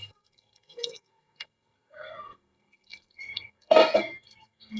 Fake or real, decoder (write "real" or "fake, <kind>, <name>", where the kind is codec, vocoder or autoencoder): fake, codec, SNAC